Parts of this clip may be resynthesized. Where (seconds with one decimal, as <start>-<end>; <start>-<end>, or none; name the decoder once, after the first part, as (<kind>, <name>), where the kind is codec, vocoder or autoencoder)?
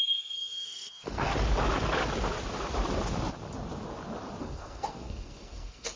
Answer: 0.0-1.3 (codec, SNAC); 4.4-6.0